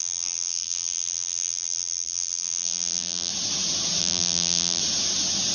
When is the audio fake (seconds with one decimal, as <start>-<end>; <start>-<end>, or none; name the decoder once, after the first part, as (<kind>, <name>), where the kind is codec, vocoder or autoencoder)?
0.0-3.3 (vocoder, BigVGAN v2); 4.0-4.8